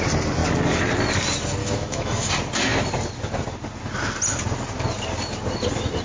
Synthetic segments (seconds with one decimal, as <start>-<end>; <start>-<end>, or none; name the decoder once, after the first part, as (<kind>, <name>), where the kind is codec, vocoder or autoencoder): 1.6-2.3 (autoencoder, DAC-VAE)